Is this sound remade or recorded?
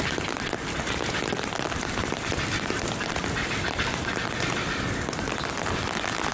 recorded